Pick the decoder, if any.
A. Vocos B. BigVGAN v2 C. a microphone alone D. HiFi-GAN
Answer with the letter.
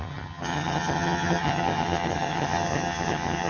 D